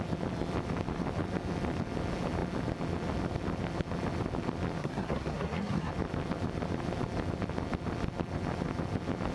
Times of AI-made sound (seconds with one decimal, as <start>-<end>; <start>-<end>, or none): 4.8-5.9